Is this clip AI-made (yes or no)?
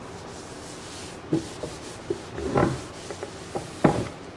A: no